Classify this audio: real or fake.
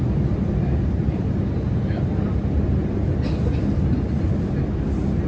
real